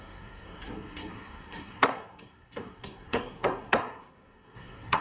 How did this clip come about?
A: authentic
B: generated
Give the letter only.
B